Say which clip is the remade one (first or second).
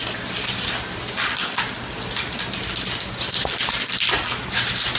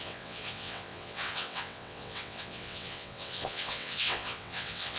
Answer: second